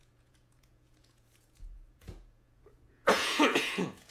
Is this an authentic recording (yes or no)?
no